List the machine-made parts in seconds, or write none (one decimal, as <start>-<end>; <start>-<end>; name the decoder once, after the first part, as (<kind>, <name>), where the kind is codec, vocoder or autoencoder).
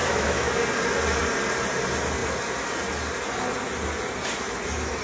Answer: 0.0-0.5 (autoencoder, DAC-VAE)